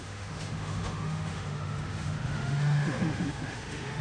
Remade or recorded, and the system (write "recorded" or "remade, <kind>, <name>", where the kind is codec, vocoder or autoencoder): remade, autoencoder, DAC-VAE